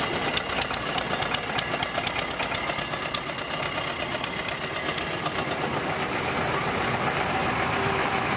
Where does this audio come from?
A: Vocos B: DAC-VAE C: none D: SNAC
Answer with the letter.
C